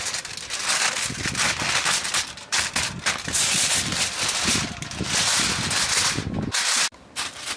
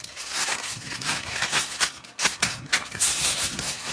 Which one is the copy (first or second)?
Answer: second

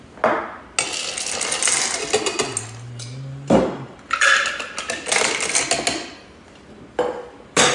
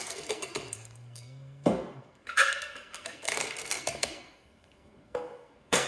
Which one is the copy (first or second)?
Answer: second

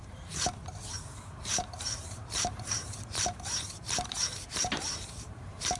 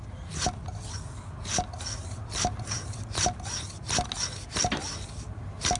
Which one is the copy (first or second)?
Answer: first